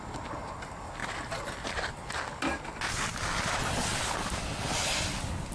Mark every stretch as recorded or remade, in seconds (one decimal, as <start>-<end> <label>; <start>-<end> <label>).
0.0-5.5 recorded